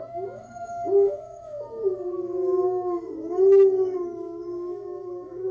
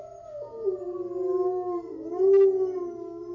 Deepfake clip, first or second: first